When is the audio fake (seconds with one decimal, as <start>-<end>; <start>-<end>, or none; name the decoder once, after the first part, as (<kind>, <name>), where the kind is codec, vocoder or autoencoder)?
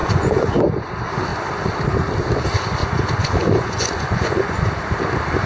0.0-0.5 (vocoder, Vocos); 2.8-4.6